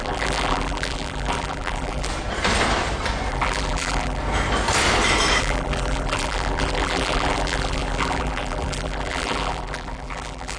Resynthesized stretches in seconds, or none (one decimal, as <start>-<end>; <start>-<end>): 0.0-2.1; 3.3-4.2; 5.4-10.6